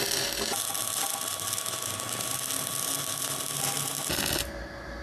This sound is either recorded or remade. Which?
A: recorded